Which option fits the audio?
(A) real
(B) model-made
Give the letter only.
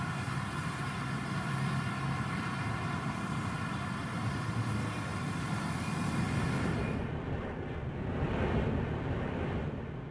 A